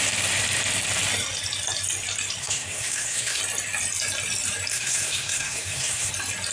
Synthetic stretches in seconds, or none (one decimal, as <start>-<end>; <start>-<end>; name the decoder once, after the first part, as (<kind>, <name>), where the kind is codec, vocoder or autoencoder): 2.4-3.4 (codec, SNAC); 4.7-6.1